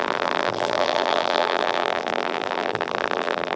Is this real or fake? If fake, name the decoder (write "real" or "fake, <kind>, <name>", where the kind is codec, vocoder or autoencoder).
fake, vocoder, BigVGAN v2